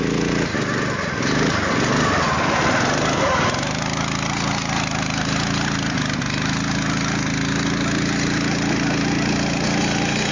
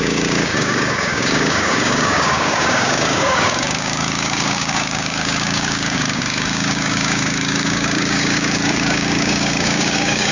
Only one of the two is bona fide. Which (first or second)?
first